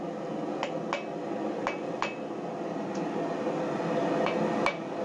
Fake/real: real